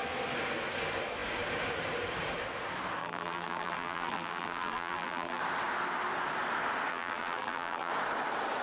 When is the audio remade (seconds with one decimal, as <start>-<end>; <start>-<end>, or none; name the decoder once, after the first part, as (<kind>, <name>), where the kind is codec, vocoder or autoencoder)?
3.0-5.4 (vocoder, BigVGAN v2); 6.9-7.9